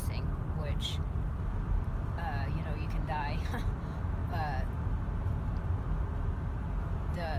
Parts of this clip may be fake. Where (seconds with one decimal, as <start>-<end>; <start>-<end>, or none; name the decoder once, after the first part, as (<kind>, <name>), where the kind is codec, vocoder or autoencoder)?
none